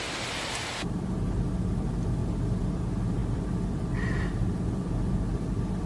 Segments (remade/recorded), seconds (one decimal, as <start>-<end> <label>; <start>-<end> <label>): 0.0-2.2 recorded; 2.2-2.7 remade; 2.7-5.9 recorded